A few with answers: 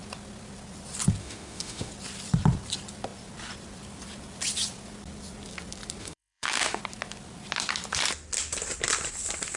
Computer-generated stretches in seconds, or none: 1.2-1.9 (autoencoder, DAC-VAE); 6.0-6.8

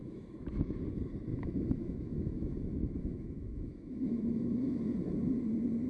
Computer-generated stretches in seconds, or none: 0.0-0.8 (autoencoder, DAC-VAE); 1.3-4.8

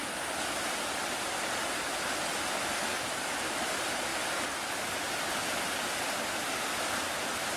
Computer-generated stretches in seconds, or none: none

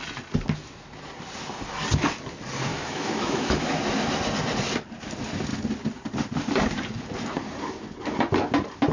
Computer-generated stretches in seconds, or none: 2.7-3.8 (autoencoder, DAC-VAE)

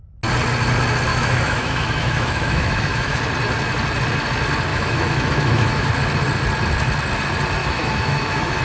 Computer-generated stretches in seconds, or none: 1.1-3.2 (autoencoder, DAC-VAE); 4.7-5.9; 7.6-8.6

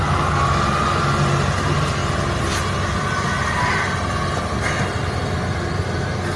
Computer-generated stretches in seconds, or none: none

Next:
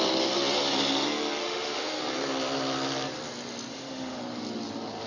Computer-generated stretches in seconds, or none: 1.4-2.0 (autoencoder, DAC-VAE); 3.7-4.2

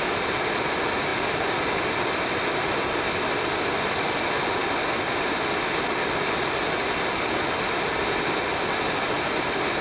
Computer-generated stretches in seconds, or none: none